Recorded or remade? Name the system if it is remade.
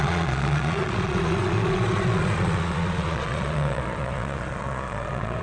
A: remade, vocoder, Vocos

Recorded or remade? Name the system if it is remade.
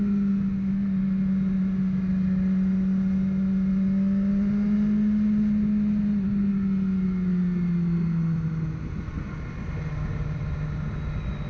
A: recorded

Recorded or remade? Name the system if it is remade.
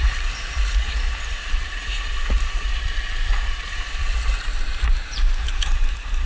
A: remade, vocoder, BigVGAN v2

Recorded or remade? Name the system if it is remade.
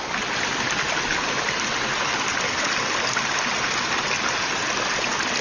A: recorded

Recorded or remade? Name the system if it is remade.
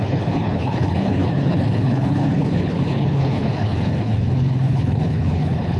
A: remade, codec, HILCodec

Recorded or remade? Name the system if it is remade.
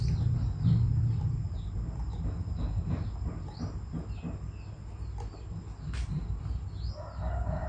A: recorded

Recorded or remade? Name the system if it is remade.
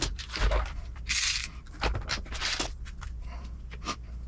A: recorded